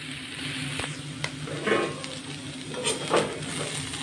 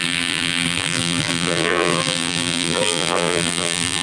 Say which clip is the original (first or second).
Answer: first